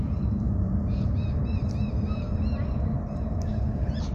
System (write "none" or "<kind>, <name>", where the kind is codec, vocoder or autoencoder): vocoder, BigVGAN v2